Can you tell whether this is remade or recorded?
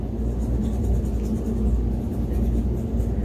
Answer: recorded